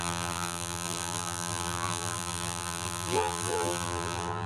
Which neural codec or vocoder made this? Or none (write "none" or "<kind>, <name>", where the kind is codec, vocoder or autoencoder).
vocoder, BigVGAN v2